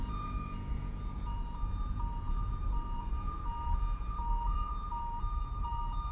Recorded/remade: remade